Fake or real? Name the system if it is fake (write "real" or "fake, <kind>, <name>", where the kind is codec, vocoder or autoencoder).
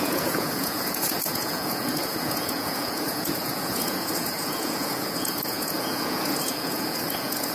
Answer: fake, vocoder, Vocos